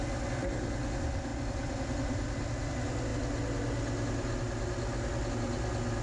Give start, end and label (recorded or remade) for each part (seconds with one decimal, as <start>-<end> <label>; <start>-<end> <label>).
0.0-1.3 recorded; 1.3-2.7 remade; 2.7-6.0 recorded